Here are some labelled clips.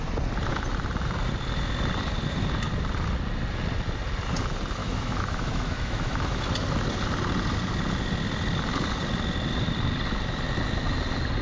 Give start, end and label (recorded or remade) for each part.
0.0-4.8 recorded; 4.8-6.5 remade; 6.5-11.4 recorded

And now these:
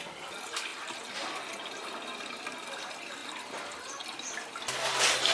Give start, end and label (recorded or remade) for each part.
0.0-5.3 recorded

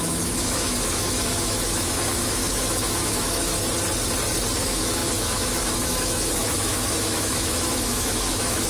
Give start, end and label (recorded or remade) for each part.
0.0-3.6 remade; 3.6-4.6 recorded; 4.6-8.7 remade

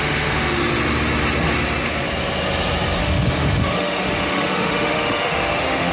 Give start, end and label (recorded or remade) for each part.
0.0-0.6 remade; 0.6-3.0 recorded; 3.0-5.9 remade

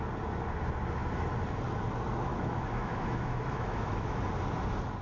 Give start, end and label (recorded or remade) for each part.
0.0-2.3 recorded; 2.3-4.2 remade; 4.2-5.0 recorded

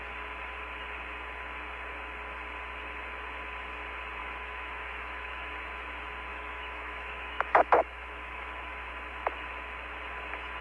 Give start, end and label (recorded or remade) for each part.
0.0-4.2 recorded; 4.2-5.5 remade; 5.5-6.3 recorded; 6.3-8.9 remade; 8.9-10.6 recorded

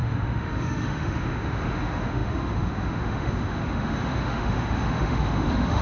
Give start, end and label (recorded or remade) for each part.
0.0-5.8 remade

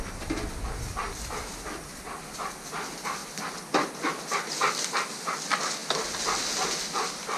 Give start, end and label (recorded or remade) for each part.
0.0-7.4 recorded